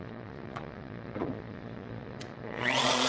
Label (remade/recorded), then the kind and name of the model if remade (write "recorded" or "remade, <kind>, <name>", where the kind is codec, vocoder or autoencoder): remade, vocoder, Vocos